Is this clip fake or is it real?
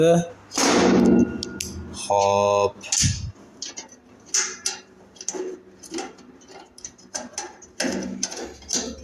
real